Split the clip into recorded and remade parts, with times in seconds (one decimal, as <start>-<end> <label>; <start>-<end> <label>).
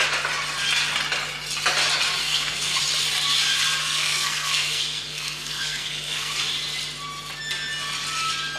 0.0-2.2 recorded; 2.2-2.8 remade; 2.8-3.8 recorded; 3.8-6.4 remade; 6.4-8.6 recorded